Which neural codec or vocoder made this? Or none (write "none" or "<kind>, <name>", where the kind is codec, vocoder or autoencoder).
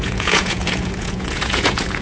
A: vocoder, Vocos